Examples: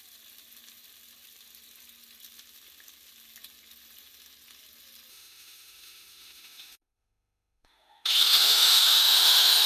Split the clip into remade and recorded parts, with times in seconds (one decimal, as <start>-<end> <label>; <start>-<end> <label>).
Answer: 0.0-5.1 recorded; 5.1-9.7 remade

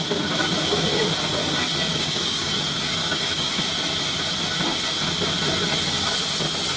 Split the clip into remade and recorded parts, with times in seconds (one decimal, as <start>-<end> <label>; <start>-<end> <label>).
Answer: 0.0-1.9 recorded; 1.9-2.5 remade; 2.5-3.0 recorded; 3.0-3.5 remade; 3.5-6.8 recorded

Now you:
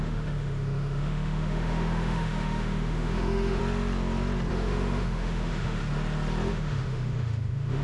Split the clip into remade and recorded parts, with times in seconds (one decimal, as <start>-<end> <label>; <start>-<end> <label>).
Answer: 0.0-3.6 remade; 3.6-4.5 recorded; 4.5-5.8 remade; 5.8-6.5 recorded; 6.5-7.8 remade